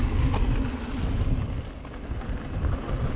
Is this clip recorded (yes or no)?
yes